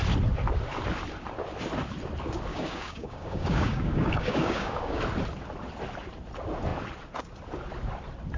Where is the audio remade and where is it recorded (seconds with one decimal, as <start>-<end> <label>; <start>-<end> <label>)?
0.0-2.5 recorded; 2.5-5.0 remade; 5.0-8.4 recorded